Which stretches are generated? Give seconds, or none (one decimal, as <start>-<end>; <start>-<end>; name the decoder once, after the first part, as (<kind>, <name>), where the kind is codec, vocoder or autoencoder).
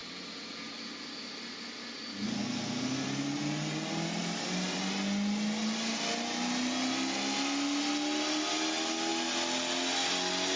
none